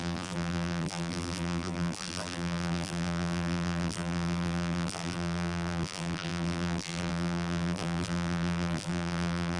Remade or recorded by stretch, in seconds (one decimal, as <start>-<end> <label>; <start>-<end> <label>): 0.0-9.6 remade